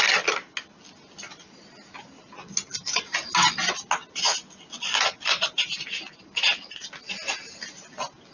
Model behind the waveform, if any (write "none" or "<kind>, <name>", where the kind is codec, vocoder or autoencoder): none